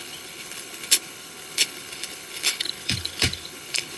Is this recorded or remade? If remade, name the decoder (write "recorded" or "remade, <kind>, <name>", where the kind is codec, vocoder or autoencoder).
remade, codec, HILCodec